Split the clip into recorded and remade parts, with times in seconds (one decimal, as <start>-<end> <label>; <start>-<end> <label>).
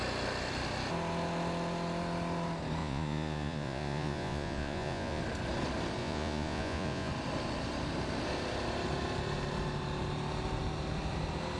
0.0-2.8 recorded; 2.8-5.2 remade; 5.2-6.0 recorded; 6.0-7.1 remade; 7.1-11.6 recorded